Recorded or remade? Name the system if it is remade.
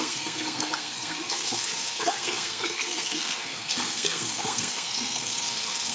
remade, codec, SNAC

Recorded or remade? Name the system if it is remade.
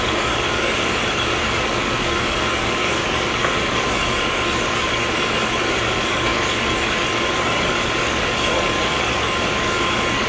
remade, codec, DAC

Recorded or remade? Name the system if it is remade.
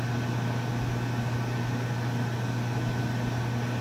recorded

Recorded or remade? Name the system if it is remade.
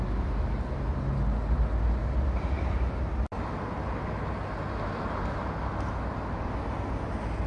recorded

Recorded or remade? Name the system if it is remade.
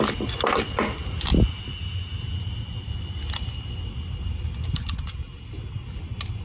recorded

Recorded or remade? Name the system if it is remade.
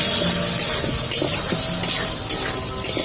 recorded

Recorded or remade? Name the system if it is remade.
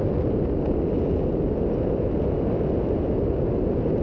recorded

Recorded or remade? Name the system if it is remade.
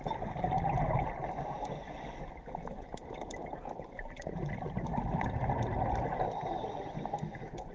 recorded